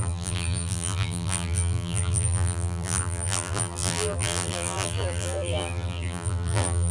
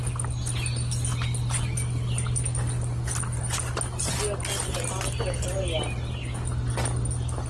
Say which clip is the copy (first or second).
first